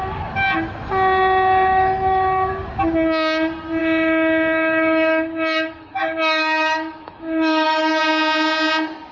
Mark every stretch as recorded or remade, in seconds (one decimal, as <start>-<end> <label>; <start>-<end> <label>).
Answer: 0.0-1.7 recorded; 1.7-2.5 remade; 2.5-3.8 recorded; 3.8-8.0 remade; 8.0-9.1 recorded